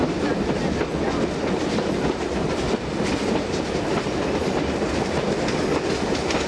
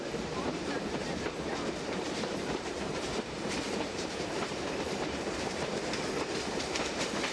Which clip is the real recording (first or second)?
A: first